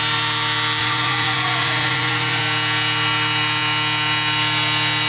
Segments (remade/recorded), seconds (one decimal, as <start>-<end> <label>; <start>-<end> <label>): 0.0-0.8 recorded; 0.8-2.4 remade; 2.4-5.1 recorded